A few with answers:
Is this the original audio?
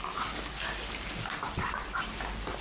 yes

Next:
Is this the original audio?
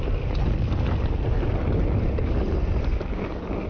yes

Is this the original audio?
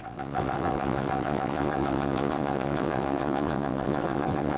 no